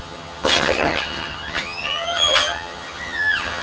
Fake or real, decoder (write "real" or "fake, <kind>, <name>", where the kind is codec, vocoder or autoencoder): fake, vocoder, HiFi-GAN